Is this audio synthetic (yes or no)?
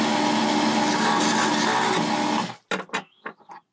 no